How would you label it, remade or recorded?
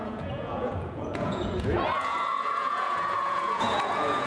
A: remade